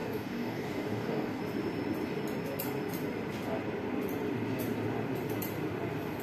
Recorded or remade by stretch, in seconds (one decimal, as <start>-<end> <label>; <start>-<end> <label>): 0.0-1.4 remade; 1.4-6.2 recorded